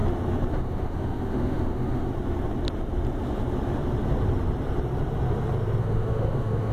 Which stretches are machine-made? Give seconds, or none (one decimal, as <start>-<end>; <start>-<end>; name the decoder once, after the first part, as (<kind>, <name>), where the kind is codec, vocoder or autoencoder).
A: 0.5-2.1 (autoencoder, DAC-VAE); 5.8-6.7